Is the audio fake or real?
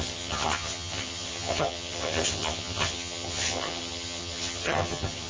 fake